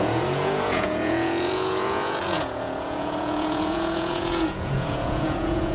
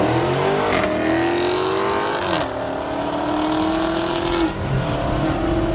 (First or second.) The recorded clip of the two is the second